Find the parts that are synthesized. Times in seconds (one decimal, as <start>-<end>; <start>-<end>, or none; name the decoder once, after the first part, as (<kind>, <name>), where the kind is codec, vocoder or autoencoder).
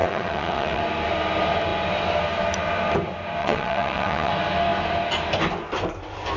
0.0-0.8 (vocoder, WaveNeXt); 3.4-4.3